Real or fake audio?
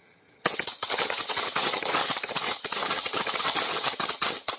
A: fake